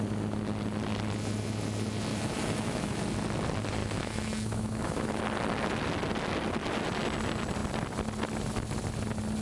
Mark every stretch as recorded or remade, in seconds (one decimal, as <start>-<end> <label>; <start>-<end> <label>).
0.0-2.1 recorded; 2.1-3.0 remade; 3.0-3.8 recorded; 3.8-5.2 remade; 5.2-9.4 recorded